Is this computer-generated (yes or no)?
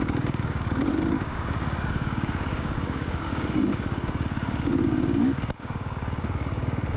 yes